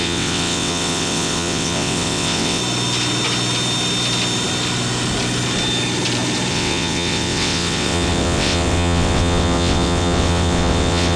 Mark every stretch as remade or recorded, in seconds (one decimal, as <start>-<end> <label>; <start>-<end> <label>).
0.0-2.6 remade; 2.6-6.5 recorded; 6.5-11.2 remade